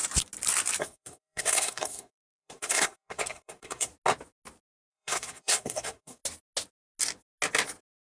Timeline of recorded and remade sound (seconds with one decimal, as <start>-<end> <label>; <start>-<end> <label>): 0.0-0.8 recorded; 0.8-3.9 remade; 3.9-4.9 recorded; 4.9-6.2 remade; 6.2-8.2 recorded